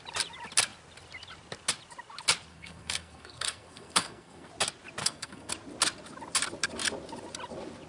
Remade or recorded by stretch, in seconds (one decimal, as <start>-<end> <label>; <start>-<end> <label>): 0.0-2.5 recorded; 2.5-4.5 remade; 4.5-5.0 recorded; 5.0-5.5 remade; 5.5-7.9 recorded